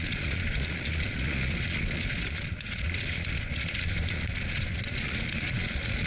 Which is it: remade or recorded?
remade